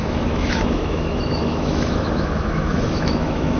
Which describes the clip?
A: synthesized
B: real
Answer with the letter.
A